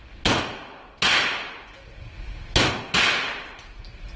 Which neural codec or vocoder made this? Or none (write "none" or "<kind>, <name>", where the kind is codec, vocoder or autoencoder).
none